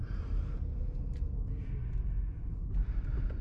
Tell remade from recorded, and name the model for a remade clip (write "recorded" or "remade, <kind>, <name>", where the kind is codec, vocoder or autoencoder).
recorded